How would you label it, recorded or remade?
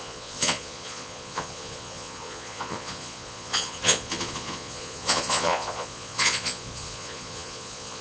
remade